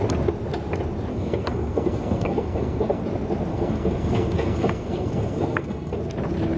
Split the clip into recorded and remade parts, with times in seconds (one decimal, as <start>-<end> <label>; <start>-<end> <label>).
0.0-1.1 recorded; 1.1-3.0 remade; 3.0-3.5 recorded; 3.5-6.0 remade; 6.0-6.6 recorded